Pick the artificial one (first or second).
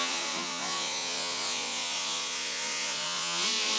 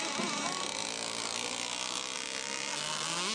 first